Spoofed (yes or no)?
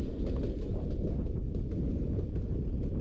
no